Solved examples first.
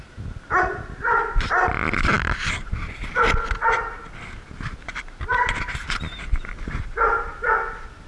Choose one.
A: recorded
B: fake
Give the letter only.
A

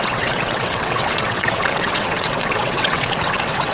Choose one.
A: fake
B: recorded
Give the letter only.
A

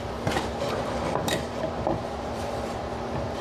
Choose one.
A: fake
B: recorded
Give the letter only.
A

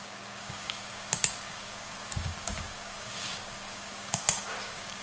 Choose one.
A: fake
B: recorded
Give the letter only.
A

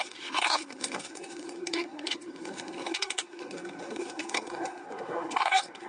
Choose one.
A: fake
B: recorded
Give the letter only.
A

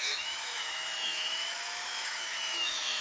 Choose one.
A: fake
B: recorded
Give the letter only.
A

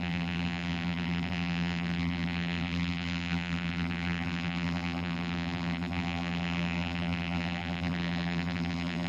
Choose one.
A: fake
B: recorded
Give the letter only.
A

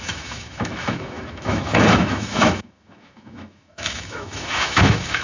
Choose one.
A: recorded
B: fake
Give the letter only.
B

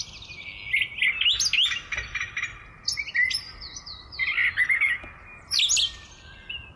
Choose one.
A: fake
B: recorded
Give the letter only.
B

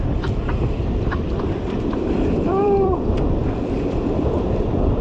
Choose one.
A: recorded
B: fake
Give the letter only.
B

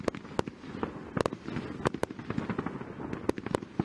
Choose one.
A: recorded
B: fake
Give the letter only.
A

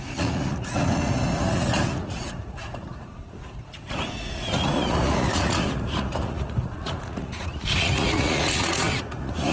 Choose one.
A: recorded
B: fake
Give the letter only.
B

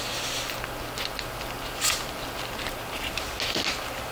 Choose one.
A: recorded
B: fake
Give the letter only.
A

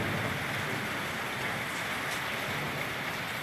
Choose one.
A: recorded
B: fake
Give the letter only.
A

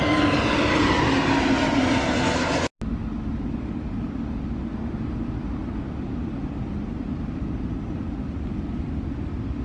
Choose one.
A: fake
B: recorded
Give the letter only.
B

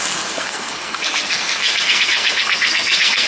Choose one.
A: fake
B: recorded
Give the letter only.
A